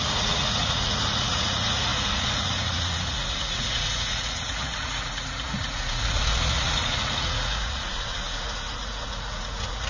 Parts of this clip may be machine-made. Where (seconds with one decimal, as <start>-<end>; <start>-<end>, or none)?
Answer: 0.0-9.9